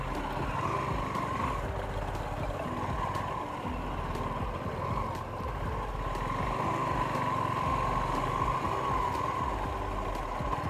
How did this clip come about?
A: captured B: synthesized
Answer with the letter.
A